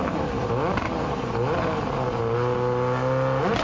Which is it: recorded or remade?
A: recorded